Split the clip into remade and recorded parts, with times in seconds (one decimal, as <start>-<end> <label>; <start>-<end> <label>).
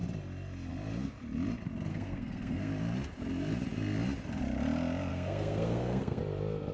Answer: 0.0-1.9 recorded; 1.9-2.7 remade; 2.7-5.1 recorded; 5.1-6.2 remade; 6.2-6.7 recorded